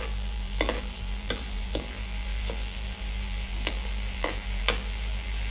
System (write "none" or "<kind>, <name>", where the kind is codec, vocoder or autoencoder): vocoder, BigVGAN v2